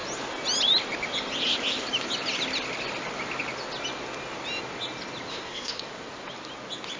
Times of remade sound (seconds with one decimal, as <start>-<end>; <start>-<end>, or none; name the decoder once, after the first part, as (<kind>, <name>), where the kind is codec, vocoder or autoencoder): 5.3-5.8 (codec, SNAC)